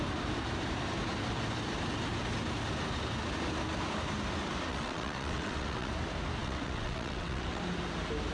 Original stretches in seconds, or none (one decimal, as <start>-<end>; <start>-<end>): 0.0-4.7; 5.9-6.4; 7.6-8.3